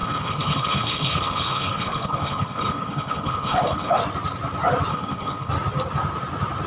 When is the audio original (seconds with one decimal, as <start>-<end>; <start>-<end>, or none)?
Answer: 4.0-4.9; 5.5-6.7